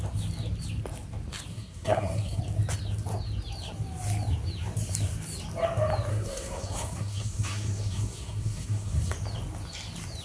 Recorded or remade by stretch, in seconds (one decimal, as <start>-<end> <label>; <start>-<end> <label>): 0.0-1.5 recorded; 1.5-2.4 remade; 2.4-6.1 recorded; 6.1-9.1 remade; 9.1-10.2 recorded